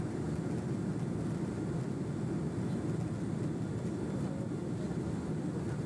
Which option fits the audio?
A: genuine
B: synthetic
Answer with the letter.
A